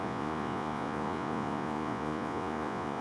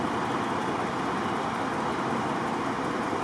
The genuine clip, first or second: second